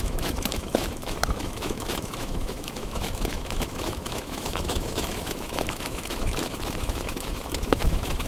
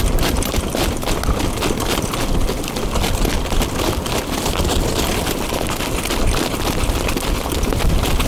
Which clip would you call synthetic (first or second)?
first